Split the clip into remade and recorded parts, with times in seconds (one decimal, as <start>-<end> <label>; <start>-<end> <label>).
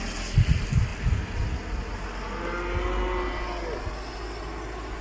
0.0-5.0 recorded